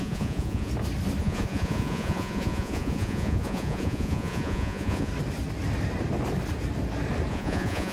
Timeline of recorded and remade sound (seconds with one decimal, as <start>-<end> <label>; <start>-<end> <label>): 0.0-0.7 remade; 0.7-1.2 recorded; 1.2-5.1 remade; 5.1-7.3 recorded; 7.3-7.9 remade